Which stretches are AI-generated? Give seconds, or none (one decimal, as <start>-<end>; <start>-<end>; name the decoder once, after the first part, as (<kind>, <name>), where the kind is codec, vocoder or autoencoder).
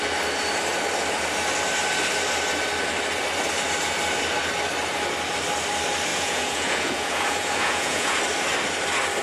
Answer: 6.1-8.2 (vocoder, Vocos)